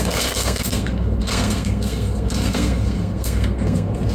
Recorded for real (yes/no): no